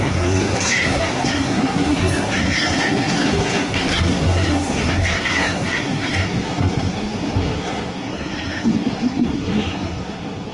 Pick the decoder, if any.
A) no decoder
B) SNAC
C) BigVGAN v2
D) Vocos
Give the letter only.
B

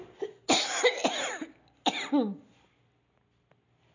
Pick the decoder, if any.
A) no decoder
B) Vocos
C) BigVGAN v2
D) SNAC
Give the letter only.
A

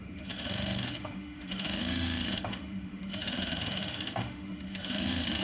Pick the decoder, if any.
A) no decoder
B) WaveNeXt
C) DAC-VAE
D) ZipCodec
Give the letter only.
C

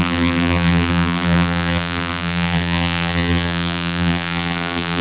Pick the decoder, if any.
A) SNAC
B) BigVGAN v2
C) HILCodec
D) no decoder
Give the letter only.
B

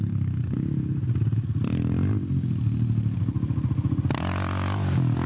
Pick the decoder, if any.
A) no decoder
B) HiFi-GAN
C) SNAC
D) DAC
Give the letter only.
A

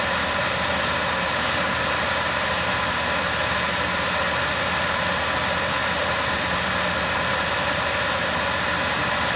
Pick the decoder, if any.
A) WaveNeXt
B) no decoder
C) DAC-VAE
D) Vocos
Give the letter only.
B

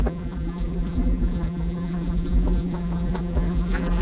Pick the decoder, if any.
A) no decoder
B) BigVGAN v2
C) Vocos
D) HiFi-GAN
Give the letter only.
B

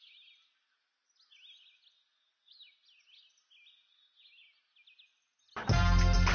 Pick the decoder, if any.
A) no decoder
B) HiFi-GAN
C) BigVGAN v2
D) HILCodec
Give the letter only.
A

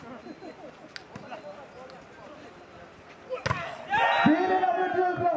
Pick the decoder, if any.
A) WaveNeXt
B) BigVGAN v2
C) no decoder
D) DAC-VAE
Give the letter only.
C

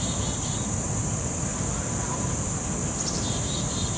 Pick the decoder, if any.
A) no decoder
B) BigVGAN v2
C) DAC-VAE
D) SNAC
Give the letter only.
B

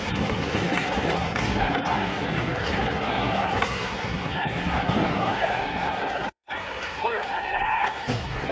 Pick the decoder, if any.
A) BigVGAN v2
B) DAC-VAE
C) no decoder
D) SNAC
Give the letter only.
D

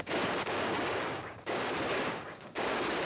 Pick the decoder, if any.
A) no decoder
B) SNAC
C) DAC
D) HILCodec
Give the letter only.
C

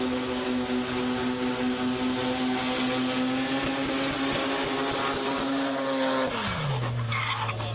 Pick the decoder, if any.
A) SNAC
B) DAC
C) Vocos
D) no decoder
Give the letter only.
D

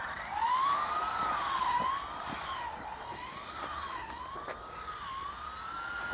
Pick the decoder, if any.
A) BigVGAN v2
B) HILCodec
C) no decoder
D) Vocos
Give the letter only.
C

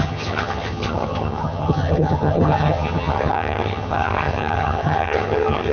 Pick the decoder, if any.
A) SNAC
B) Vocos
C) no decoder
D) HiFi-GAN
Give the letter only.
D